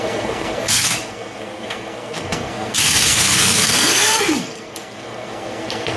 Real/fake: fake